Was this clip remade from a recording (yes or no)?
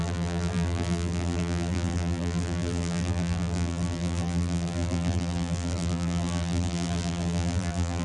yes